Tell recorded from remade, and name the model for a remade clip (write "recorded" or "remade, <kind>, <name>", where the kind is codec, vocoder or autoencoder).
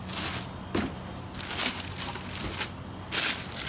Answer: recorded